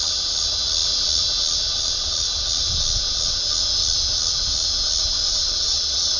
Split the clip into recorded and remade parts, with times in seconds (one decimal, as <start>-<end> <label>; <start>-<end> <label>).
0.0-5.2 recorded; 5.2-6.2 remade